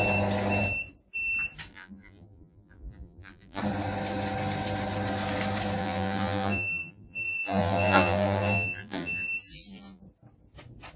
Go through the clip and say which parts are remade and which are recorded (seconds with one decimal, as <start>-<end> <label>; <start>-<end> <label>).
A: 0.0-1.7 recorded; 1.7-3.6 remade; 3.6-5.8 recorded; 5.8-10.0 remade; 10.0-11.0 recorded